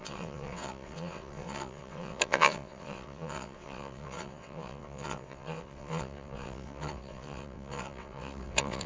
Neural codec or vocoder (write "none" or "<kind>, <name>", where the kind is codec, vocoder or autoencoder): vocoder, WaveNeXt